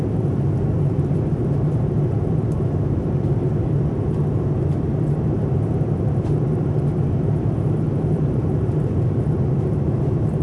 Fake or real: fake